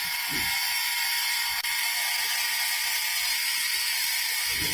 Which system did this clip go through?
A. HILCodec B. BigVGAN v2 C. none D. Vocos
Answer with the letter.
B